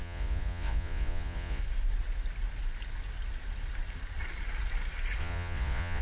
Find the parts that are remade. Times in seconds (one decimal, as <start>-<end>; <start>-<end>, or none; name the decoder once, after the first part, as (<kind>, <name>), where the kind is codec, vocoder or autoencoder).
0.0-1.6 (vocoder, Vocos); 5.2-6.0